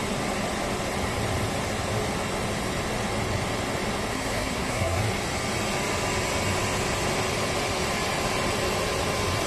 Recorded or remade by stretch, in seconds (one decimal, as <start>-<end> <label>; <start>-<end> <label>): 0.0-4.1 recorded; 4.1-5.0 remade; 5.0-9.5 recorded